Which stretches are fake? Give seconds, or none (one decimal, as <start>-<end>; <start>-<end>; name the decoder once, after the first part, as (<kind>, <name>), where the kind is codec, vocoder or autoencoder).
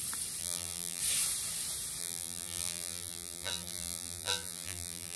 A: 0.4-1.0 (vocoder, BigVGAN v2); 2.0-5.2